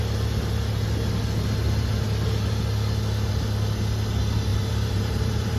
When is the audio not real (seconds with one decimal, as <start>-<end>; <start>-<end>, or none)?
4.5-5.6